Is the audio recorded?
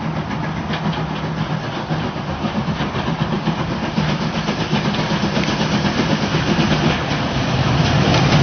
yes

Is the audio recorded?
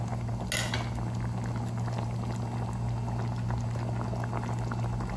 yes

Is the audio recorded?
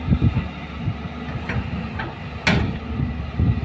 yes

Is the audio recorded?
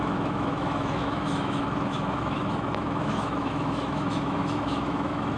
no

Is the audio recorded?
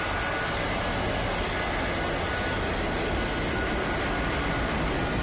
yes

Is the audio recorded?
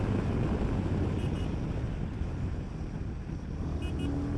yes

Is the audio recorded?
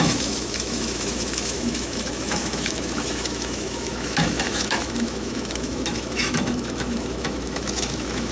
no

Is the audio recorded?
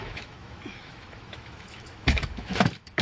no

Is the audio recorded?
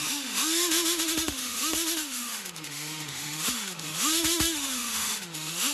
no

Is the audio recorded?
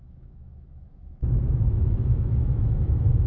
no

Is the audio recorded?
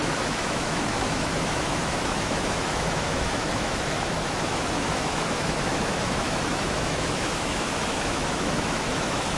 no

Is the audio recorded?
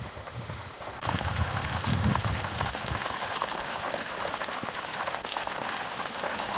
no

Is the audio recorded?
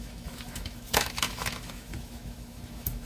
no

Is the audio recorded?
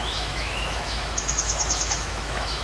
no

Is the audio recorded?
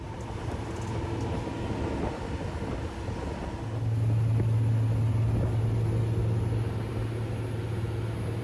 yes